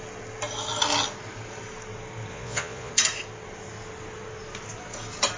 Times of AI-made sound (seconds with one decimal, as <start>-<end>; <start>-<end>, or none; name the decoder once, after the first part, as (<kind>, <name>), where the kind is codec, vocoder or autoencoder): 2.3-2.9 (vocoder, Vocos)